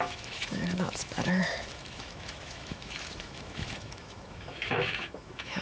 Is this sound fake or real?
fake